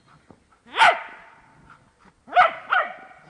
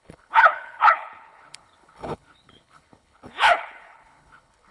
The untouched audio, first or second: first